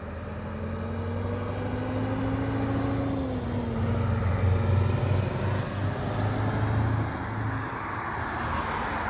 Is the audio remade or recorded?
recorded